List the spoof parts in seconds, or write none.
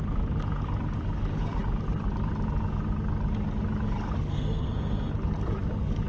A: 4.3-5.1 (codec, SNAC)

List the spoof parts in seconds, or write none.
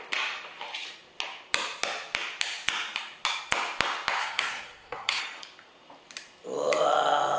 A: 4.2-5.2 (codec, SNAC)